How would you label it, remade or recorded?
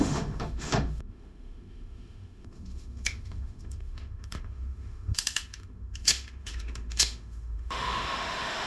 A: remade